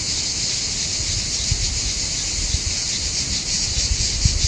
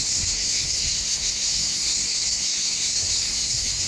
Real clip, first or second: first